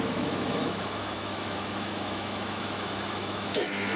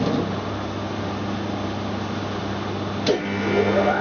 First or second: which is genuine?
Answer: second